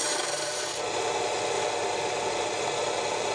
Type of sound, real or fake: real